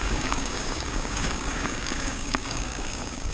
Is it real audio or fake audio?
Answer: fake